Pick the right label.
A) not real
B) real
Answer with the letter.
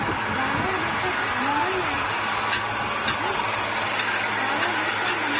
B